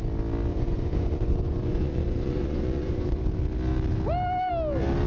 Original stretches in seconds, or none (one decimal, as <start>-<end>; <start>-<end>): 0.0-0.5; 3.2-5.1